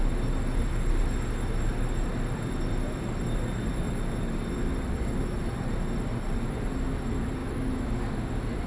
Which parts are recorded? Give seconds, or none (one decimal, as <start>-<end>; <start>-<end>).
0.0-7.4; 8.0-8.7